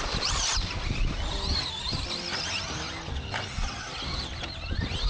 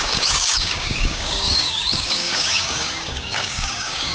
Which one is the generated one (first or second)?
second